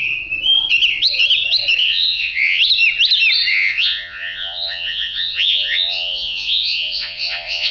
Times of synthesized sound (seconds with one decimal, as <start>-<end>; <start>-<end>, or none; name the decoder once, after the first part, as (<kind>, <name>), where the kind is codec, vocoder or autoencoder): 1.8-2.6 (vocoder, Vocos); 3.5-7.7